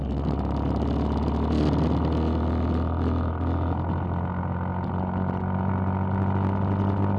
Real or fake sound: real